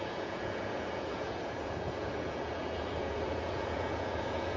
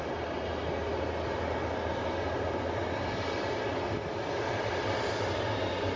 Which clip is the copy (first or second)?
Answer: first